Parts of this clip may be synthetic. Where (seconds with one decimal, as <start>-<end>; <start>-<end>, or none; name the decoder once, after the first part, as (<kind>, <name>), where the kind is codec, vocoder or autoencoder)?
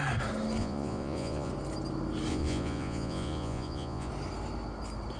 0.6-1.5 (vocoder, Vocos); 2.3-4.1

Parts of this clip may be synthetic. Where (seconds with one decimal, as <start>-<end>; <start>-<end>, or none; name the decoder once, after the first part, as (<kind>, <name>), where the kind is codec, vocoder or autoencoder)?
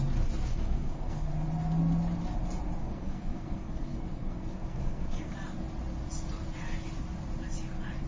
0.5-1.3 (codec, SNAC); 2.8-5.3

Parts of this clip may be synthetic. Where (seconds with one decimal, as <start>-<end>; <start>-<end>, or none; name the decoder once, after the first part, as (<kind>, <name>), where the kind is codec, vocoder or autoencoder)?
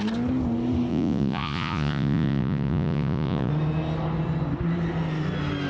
0.9-3.5 (vocoder, Vocos)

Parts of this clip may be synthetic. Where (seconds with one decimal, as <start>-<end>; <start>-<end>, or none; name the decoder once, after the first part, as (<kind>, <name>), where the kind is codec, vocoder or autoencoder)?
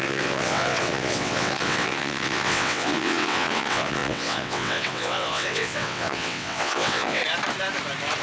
0.0-7.2 (vocoder, WaveNeXt)